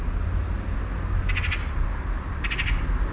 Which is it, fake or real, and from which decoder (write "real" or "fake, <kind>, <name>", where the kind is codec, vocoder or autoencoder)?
real